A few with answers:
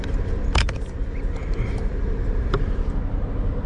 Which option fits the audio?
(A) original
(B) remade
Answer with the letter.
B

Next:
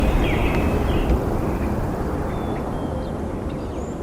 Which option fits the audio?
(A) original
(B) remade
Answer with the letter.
A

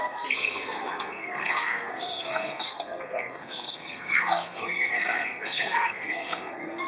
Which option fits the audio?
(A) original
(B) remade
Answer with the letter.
B